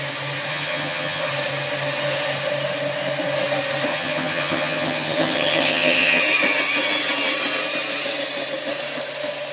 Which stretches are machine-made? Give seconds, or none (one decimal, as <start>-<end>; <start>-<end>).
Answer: 0.5-1.3; 3.9-6.2